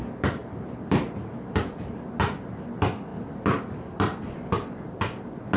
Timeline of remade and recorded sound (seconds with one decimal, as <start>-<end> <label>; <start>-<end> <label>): 0.0-0.4 recorded; 0.4-2.0 remade; 2.0-5.6 recorded